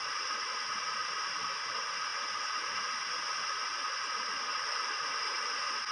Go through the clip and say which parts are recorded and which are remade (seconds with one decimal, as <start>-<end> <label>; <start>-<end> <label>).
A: 0.0-5.9 recorded